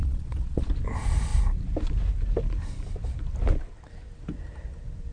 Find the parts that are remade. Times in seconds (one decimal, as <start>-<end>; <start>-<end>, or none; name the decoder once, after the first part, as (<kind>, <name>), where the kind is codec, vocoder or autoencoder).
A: 0.0-0.7 (vocoder, Vocos)